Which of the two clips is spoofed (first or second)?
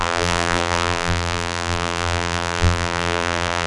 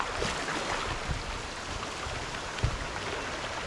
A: first